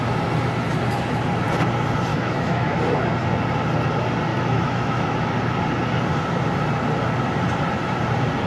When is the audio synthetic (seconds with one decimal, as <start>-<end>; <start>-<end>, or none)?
2.1-2.8; 4.3-5.3